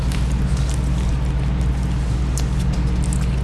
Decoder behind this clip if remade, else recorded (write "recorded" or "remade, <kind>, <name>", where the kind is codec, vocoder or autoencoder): recorded